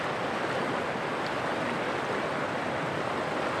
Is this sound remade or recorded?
recorded